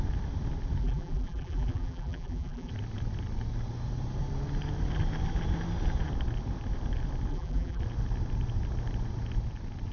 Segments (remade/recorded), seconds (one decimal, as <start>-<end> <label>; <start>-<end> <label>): 0.0-0.8 recorded; 0.8-2.7 remade; 2.7-7.3 recorded; 7.3-7.8 remade; 7.8-9.9 recorded